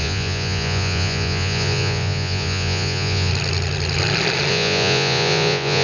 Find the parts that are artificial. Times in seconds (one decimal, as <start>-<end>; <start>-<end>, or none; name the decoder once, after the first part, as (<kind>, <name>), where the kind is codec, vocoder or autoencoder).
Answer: 0.0-3.3 (vocoder, Vocos); 4.5-5.8